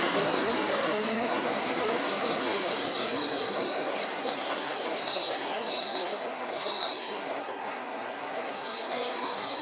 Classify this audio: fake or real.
fake